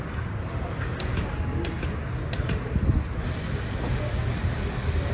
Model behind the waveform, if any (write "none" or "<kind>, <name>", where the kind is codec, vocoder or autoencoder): none